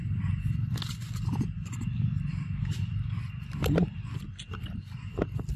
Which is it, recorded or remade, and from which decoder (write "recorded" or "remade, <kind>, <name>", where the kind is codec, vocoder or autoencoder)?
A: recorded